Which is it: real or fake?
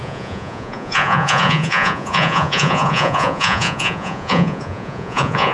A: fake